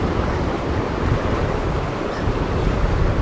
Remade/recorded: remade